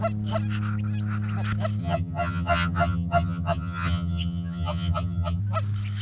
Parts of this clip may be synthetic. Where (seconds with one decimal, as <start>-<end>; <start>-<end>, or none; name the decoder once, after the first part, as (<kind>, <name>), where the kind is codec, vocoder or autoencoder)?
1.8-5.4 (vocoder, HiFi-GAN)